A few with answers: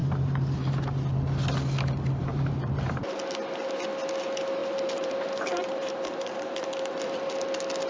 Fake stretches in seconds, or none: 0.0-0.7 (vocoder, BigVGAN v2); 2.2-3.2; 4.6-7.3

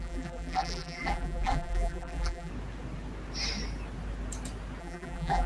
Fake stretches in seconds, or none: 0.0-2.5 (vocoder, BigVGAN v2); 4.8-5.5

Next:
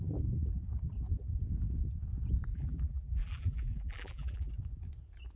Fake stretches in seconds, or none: 2.5-4.5 (vocoder, BigVGAN v2)

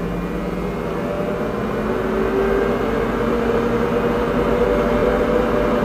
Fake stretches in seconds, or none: 5.0-5.8 (vocoder, BigVGAN v2)